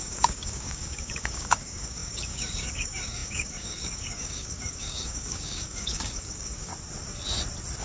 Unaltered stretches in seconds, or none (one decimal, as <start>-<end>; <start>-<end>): 6.7-7.8